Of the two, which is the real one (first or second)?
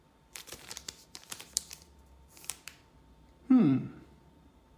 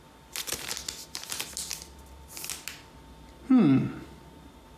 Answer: second